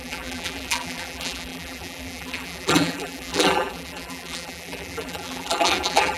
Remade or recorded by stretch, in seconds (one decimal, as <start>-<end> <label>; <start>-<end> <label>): 0.0-6.2 remade